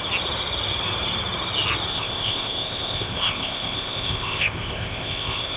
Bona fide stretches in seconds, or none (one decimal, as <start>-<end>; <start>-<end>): 0.0-1.9